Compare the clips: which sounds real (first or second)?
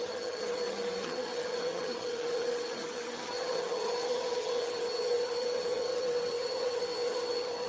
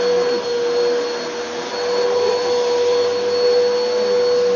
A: second